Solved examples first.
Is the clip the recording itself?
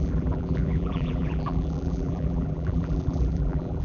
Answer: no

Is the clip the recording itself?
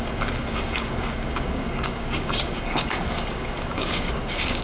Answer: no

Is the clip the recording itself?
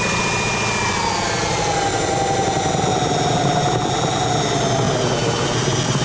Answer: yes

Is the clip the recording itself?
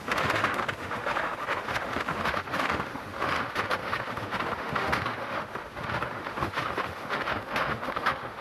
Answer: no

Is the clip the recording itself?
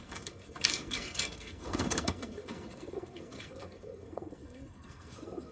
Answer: no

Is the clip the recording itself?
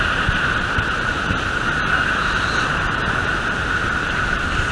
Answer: no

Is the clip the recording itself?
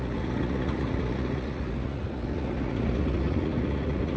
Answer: no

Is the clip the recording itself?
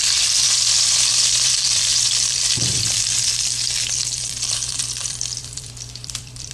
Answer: no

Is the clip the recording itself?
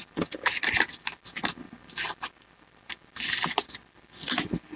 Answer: yes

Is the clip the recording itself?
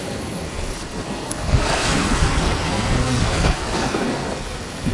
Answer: no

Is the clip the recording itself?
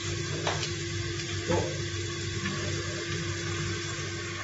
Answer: no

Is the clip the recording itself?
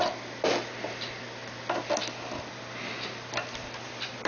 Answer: yes